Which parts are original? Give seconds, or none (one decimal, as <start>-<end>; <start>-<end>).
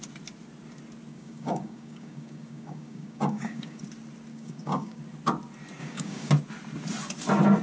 0.0-1.1; 3.8-4.3; 5.0-5.8; 6.3-7.6